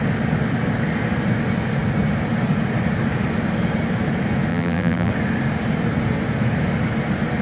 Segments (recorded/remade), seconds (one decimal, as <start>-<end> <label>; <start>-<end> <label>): 0.0-4.5 recorded; 4.5-5.1 remade; 5.1-7.4 recorded